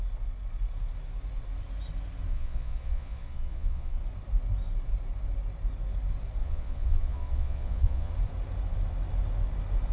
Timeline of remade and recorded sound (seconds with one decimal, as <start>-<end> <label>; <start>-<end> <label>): 0.0-2.3 recorded; 2.3-4.0 remade; 4.0-6.4 recorded; 6.4-8.1 remade; 8.1-9.9 recorded